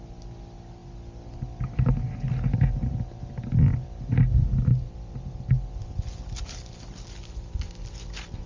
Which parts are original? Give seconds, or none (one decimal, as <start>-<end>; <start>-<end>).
0.0-8.5